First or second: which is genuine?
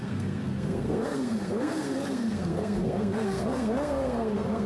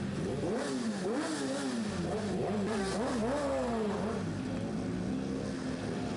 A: second